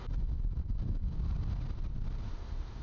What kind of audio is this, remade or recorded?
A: recorded